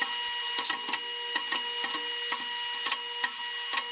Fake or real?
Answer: real